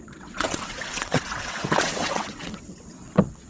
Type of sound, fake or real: fake